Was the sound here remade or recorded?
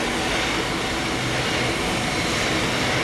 recorded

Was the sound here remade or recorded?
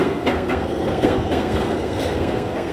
remade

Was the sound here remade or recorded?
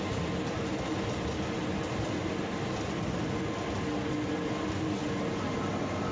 recorded